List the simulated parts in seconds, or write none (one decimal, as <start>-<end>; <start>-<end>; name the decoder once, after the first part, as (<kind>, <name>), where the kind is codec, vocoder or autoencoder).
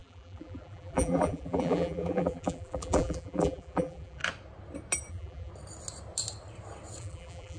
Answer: 0.0-4.2 (vocoder, BigVGAN v2); 5.1-5.5; 7.0-7.6